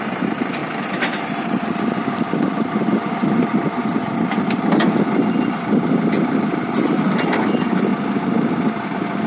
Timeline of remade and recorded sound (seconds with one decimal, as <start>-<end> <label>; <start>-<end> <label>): 0.0-7.9 remade; 7.9-8.6 recorded; 8.6-9.3 remade